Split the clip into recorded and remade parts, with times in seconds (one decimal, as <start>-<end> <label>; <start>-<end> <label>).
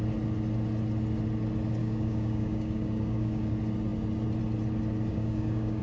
0.0-1.8 recorded; 1.8-3.5 remade; 3.5-5.1 recorded; 5.1-5.8 remade